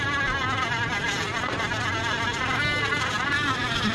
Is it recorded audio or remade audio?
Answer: recorded